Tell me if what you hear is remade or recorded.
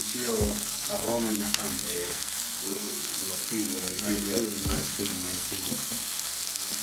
remade